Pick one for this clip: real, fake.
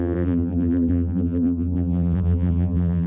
fake